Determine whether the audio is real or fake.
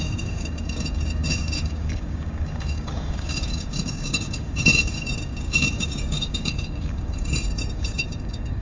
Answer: fake